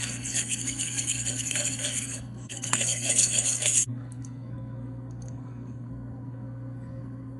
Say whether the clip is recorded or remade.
remade